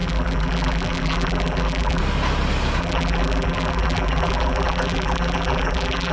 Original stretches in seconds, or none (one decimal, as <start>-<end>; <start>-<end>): 2.0-2.8